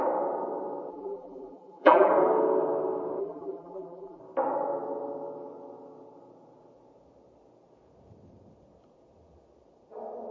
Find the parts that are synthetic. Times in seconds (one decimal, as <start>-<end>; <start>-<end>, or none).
0.9-2.1; 3.2-4.2